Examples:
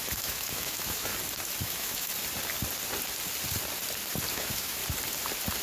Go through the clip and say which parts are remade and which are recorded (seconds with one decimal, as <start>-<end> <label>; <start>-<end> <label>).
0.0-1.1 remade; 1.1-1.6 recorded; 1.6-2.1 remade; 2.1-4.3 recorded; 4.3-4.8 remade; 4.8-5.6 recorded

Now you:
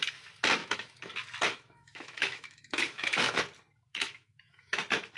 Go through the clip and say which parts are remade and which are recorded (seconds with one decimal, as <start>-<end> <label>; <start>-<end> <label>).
0.0-0.6 recorded; 0.6-1.1 remade; 1.1-1.5 recorded; 1.5-3.4 remade; 3.4-3.9 recorded; 3.9-4.8 remade; 4.8-5.2 recorded

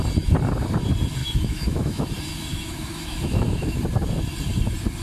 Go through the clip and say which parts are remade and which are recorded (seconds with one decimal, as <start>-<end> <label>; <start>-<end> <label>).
0.0-1.2 recorded; 1.2-2.1 remade; 2.1-2.5 recorded; 2.5-3.8 remade; 3.8-5.0 recorded

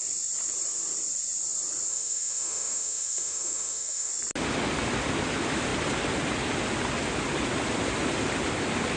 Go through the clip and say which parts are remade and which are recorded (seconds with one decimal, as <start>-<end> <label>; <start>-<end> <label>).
0.0-1.9 recorded; 1.9-4.1 remade; 4.1-9.0 recorded